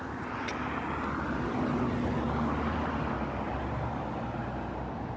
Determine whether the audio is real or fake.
real